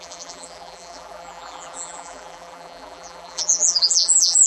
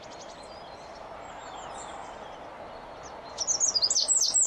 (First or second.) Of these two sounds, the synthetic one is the first